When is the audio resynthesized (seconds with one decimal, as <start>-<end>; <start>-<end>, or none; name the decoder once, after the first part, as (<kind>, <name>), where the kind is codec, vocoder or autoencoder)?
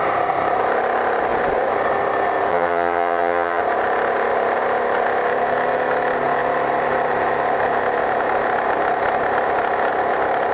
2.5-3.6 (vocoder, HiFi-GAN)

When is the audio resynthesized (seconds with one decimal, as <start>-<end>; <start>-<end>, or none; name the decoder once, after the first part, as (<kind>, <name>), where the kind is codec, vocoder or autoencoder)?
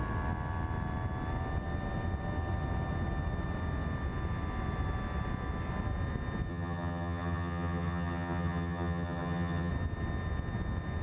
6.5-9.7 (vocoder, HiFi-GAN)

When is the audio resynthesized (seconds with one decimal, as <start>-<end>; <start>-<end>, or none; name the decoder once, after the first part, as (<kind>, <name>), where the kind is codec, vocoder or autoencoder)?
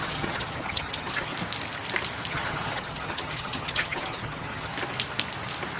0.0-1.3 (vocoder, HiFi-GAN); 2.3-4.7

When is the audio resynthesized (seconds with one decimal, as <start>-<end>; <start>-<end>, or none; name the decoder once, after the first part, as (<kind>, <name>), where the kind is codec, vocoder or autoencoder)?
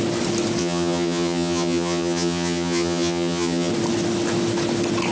0.6-3.7 (vocoder, HiFi-GAN)